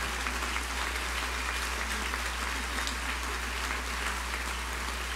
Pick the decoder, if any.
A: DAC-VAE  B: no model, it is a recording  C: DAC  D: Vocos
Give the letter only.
B